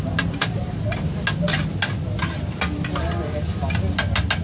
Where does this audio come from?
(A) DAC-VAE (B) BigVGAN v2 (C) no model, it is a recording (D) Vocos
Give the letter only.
C